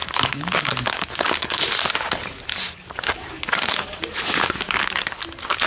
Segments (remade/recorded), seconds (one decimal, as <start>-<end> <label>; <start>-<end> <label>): 0.0-1.6 remade; 1.6-2.5 recorded; 2.5-5.2 remade; 5.2-5.7 recorded